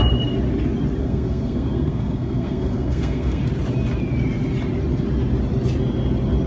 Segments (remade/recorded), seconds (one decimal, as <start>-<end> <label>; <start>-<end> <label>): 0.0-1.0 recorded; 1.0-3.4 remade; 3.4-6.5 recorded